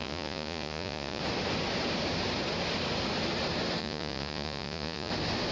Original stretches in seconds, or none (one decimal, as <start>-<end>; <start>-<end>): 1.2-3.8; 5.1-5.5